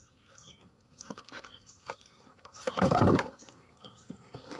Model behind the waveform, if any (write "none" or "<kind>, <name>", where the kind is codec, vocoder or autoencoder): codec, SNAC